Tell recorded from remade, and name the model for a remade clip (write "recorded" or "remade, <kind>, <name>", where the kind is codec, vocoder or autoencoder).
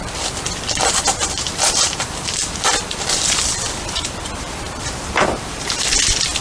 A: remade, vocoder, BigVGAN v2